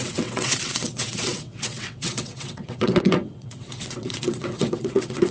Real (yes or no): no